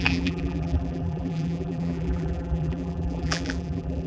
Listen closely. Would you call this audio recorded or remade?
remade